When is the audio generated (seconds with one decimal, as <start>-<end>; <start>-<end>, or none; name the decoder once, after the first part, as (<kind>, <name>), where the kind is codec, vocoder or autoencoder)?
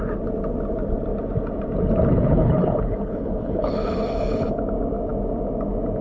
2.1-4.6 (codec, HILCodec)